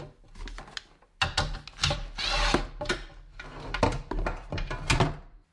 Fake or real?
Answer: real